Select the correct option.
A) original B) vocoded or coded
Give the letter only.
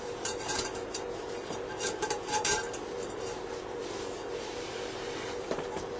B